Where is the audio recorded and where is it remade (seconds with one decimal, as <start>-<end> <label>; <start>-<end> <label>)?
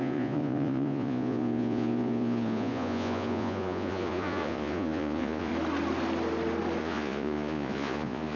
0.0-5.5 remade; 5.5-6.8 recorded; 6.8-8.4 remade